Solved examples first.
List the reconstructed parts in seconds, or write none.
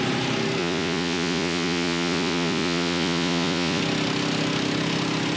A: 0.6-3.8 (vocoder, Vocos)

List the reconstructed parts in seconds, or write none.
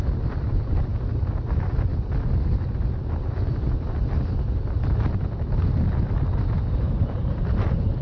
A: 0.0-1.9 (vocoder, BigVGAN v2); 6.7-8.0